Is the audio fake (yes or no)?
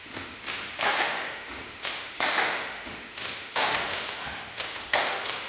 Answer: yes